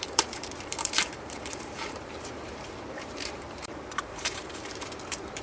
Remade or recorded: remade